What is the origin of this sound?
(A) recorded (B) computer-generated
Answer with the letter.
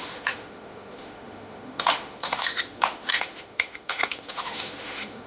B